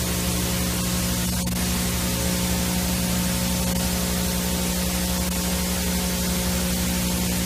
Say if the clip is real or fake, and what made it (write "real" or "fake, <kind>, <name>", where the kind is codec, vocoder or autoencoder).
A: real